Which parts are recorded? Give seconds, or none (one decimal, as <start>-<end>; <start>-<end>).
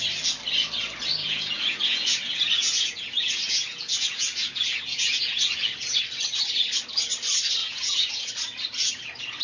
0.0-1.2; 6.0-7.6; 8.3-9.4